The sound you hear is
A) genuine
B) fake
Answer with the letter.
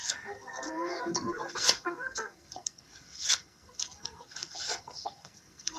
B